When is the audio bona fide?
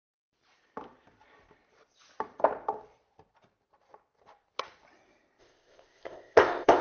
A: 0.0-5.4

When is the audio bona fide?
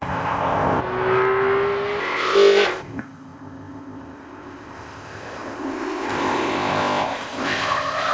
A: 0.8-2.0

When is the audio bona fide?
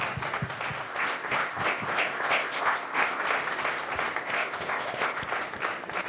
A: 0.0-0.9; 3.2-4.2; 5.2-6.1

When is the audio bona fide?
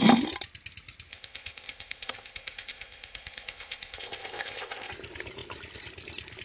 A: 0.0-1.1; 4.9-6.4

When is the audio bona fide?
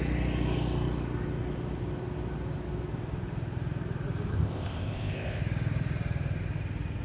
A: 0.0-4.3; 5.4-7.0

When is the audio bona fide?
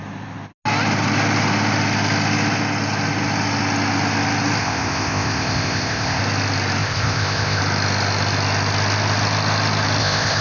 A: 0.0-4.6; 6.2-6.8; 7.6-10.0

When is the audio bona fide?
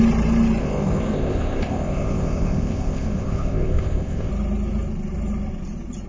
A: 0.0-0.6; 4.3-6.1